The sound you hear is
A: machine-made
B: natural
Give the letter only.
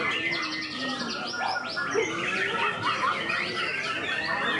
B